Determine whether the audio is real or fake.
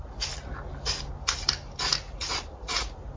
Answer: real